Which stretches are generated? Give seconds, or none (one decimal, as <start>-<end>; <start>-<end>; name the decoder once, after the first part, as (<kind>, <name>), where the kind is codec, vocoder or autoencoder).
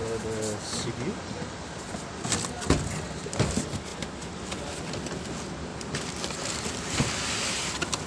none